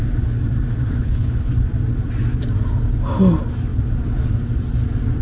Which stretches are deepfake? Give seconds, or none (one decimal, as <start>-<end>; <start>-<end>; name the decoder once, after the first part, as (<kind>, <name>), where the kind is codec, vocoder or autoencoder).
0.7-1.5 (codec, HILCodec)